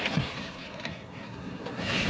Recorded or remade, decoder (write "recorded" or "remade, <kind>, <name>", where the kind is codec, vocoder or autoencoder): remade, codec, SNAC